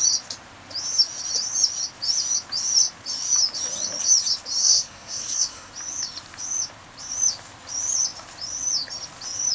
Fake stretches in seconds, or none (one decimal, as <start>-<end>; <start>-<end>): 4.6-5.7